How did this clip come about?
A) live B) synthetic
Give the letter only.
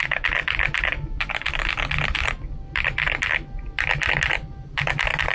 A